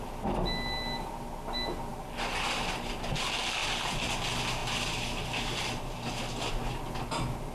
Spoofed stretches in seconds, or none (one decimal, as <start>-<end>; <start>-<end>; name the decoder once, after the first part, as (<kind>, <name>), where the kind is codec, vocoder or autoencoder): 3.6-4.1 (vocoder, BigVGAN v2); 4.6-6.5